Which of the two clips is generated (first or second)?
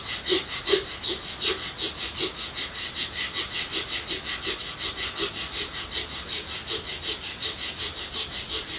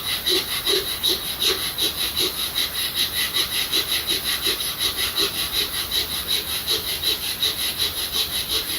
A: second